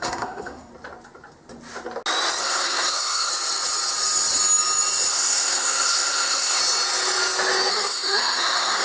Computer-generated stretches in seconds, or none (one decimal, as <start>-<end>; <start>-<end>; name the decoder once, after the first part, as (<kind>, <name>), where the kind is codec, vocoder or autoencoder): 0.0-0.7 (codec, SNAC); 2.4-3.3; 5.1-6.6; 7.7-8.8